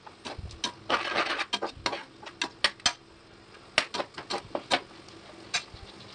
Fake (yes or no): no